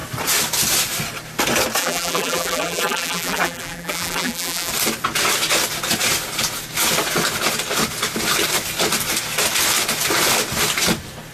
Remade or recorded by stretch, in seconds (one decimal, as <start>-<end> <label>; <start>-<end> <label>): 0.0-1.8 recorded; 1.8-4.7 remade; 4.7-11.3 recorded